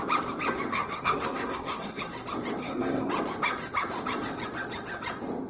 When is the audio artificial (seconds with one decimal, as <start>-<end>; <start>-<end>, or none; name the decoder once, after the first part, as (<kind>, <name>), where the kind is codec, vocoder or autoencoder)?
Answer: 0.7-2.0 (codec, SNAC); 2.6-3.1